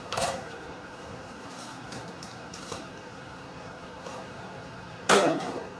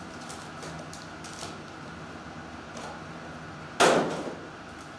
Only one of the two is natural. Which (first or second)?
second